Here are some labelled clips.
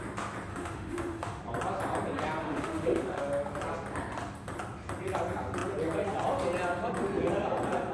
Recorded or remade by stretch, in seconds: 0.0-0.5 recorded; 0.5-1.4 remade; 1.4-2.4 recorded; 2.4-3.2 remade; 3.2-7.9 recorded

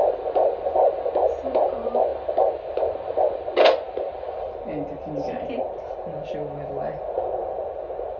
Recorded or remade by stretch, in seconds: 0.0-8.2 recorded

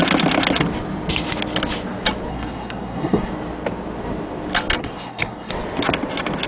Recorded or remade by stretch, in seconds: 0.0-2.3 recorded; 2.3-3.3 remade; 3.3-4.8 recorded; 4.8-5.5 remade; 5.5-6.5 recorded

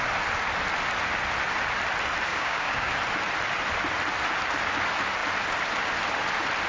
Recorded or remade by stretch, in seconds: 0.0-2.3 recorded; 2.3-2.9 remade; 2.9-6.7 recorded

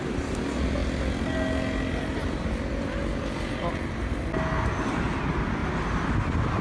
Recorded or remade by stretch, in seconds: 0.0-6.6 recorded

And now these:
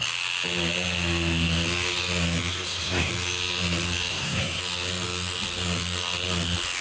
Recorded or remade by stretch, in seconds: 0.0-2.5 recorded; 2.5-3.1 remade; 3.1-4.1 recorded; 4.1-4.6 remade; 4.6-6.8 recorded